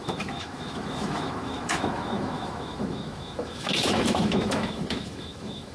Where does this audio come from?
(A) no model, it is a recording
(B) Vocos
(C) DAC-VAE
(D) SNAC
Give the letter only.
C